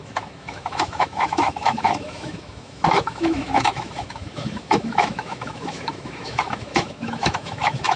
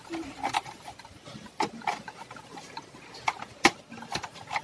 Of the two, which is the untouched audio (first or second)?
second